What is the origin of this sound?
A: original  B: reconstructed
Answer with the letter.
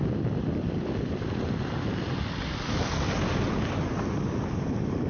A